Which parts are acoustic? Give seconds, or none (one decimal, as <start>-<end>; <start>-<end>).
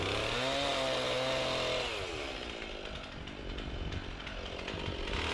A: 0.0-5.3